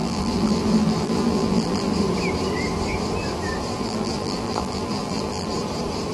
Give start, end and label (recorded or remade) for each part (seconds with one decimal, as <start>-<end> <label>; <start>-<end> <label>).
0.0-1.9 remade; 1.9-3.7 recorded; 3.7-5.5 remade; 5.5-6.1 recorded